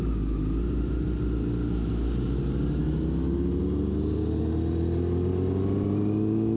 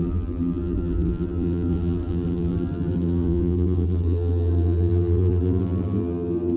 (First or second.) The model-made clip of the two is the second